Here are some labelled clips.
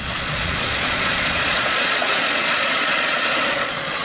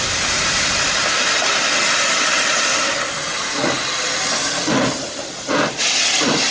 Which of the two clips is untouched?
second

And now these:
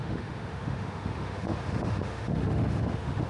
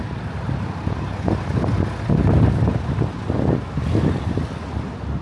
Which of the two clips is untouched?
second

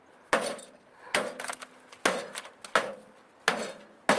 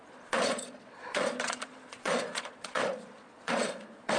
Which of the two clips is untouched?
first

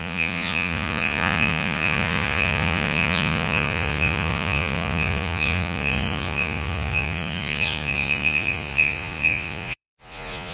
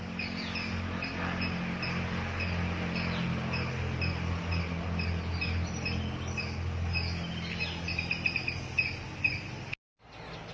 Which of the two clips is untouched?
second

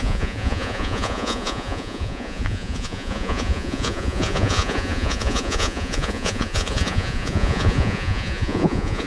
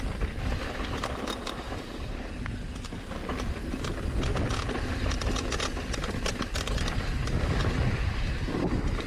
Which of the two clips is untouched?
second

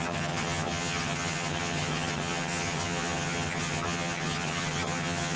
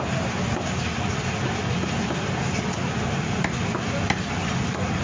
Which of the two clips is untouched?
second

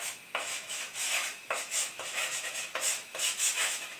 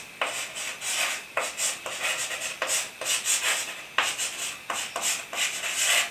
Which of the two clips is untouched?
second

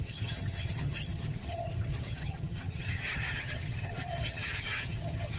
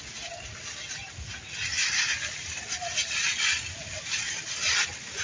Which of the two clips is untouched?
second